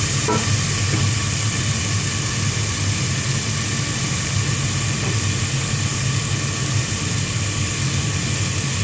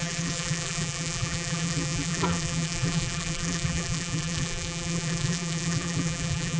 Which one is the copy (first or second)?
second